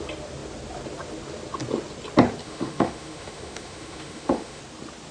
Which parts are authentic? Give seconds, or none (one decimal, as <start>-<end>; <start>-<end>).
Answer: 0.0-2.4; 4.6-5.1